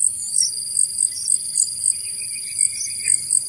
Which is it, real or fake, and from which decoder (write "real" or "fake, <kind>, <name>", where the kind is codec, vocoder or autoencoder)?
real